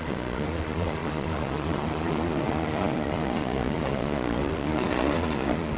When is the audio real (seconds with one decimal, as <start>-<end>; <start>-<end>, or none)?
none